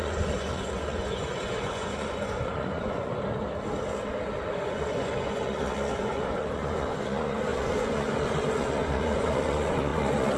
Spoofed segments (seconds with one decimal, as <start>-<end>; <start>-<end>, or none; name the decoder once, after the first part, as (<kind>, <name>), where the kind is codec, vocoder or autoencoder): 0.0-3.1 (vocoder, Vocos); 4.6-10.4